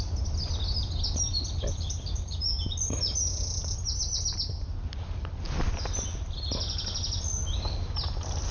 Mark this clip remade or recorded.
recorded